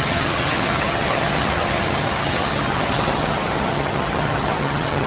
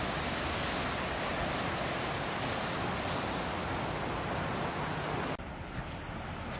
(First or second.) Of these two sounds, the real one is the second